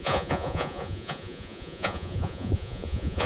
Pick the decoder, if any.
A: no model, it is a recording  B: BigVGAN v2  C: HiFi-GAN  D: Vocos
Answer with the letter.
D